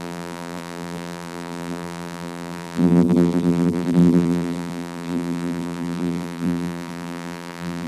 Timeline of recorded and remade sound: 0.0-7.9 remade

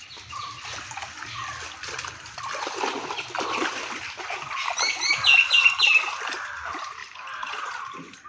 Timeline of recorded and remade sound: 0.0-7.0 recorded; 7.0-7.5 remade; 7.5-8.3 recorded

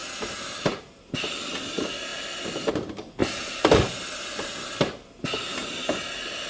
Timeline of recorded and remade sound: 0.0-3.2 recorded; 3.2-3.9 remade; 3.9-6.5 recorded

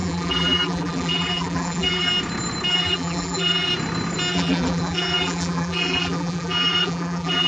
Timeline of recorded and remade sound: 0.0-2.1 remade; 2.1-2.7 recorded; 2.7-3.7 remade; 3.7-4.3 recorded; 4.3-7.5 remade

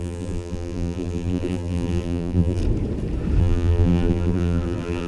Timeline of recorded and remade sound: 0.0-2.6 remade; 2.6-3.4 recorded; 3.4-5.1 remade